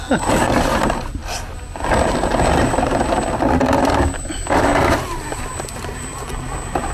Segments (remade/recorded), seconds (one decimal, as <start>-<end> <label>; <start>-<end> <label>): 0.0-6.9 recorded